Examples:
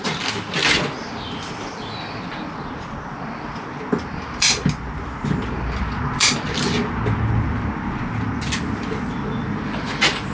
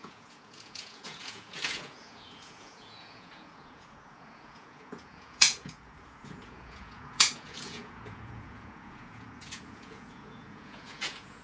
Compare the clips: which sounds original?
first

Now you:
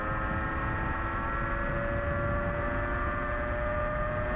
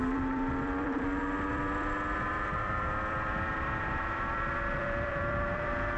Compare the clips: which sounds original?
first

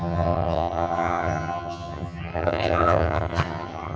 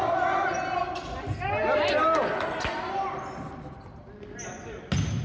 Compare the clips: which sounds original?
second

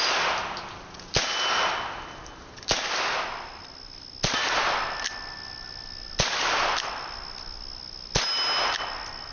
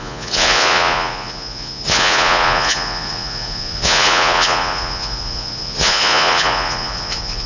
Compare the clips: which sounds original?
first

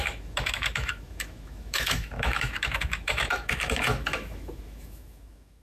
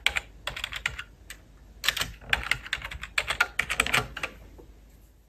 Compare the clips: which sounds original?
second